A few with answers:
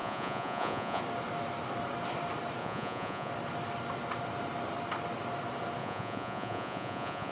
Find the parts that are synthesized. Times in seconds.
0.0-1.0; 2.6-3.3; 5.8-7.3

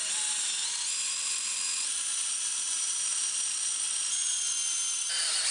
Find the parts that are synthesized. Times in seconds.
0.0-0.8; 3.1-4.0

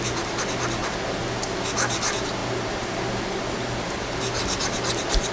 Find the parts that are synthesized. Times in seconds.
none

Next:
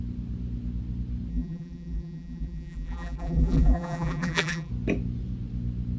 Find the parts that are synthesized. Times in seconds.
1.3-4.7

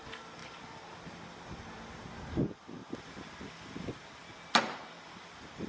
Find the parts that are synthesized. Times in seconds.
none

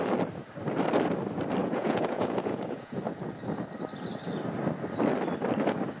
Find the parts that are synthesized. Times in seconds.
1.6-3.0

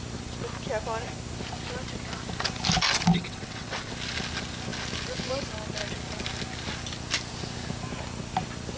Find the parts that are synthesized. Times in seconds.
3.1-3.9

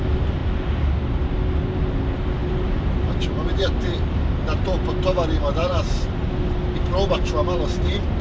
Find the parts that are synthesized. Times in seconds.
2.4-3.8; 5.6-6.3